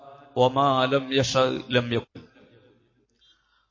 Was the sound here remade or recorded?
recorded